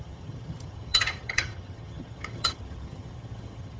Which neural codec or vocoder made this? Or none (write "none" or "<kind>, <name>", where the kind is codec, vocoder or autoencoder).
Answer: vocoder, HiFi-GAN